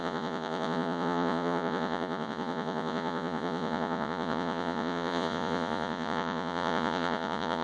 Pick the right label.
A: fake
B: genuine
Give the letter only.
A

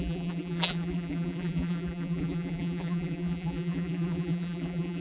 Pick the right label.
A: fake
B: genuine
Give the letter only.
A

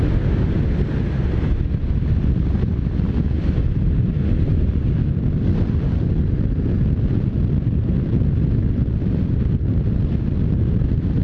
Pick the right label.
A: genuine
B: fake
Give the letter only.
A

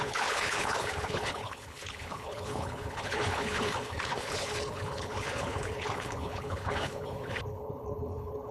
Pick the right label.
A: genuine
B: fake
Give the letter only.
B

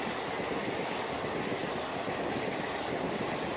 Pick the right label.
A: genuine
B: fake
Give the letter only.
A